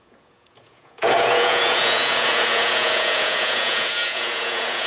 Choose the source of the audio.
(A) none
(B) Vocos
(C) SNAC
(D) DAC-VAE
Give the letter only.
B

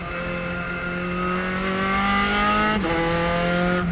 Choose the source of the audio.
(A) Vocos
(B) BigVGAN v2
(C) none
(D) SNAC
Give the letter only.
C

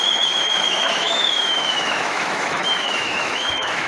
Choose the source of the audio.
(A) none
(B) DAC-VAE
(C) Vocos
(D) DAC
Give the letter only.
B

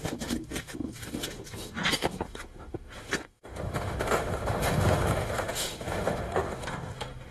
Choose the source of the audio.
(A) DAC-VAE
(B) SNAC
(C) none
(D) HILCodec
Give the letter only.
A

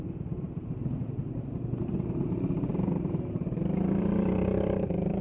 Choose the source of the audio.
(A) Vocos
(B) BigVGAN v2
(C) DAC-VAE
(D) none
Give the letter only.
B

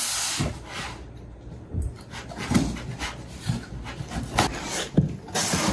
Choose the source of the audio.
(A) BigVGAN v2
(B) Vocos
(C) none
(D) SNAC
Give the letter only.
C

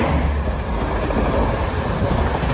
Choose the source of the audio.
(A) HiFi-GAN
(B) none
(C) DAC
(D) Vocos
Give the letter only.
B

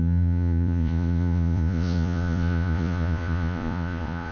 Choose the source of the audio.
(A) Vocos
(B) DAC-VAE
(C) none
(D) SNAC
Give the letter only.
A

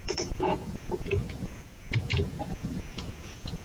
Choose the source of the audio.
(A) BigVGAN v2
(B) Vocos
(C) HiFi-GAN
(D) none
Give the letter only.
B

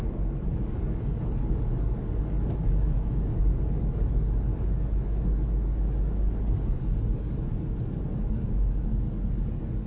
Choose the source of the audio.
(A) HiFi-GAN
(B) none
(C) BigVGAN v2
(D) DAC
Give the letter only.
D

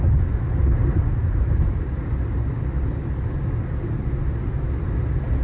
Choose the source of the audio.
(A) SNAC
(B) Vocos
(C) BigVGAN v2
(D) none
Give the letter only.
D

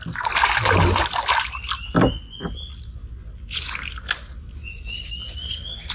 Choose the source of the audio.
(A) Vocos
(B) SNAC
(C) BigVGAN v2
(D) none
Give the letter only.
D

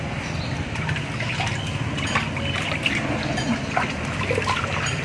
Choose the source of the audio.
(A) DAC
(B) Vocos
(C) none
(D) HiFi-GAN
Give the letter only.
C